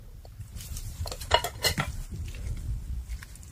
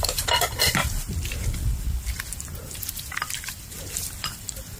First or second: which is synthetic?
second